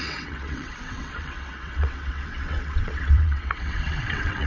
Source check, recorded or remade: remade